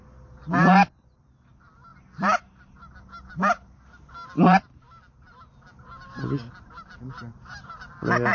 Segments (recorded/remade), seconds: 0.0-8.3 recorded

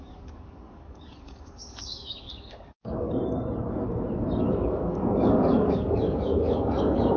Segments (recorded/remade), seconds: 0.0-3.2 remade; 3.2-4.4 recorded; 4.4-7.2 remade

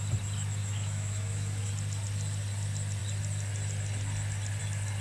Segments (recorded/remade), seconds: 0.0-0.6 recorded; 0.6-1.7 remade; 1.7-5.0 recorded

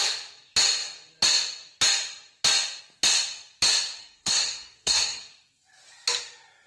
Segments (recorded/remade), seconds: 0.0-4.0 recorded; 4.0-5.2 remade; 5.2-6.7 recorded

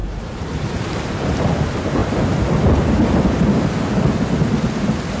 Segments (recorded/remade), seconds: 0.0-5.2 recorded